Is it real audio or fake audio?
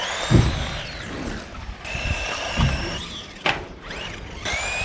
real